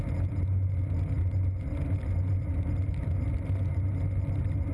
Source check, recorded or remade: recorded